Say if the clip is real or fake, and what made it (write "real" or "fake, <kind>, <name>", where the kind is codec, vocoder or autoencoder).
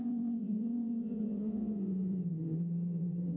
fake, vocoder, Vocos